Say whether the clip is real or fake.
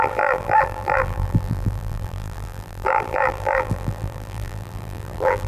fake